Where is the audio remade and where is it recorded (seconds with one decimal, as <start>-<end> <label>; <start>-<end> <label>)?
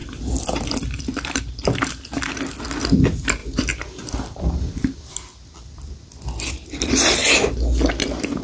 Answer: 0.0-1.4 remade; 1.4-3.4 recorded; 3.4-5.1 remade; 5.1-8.4 recorded